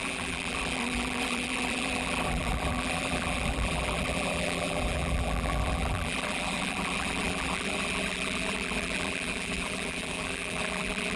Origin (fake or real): fake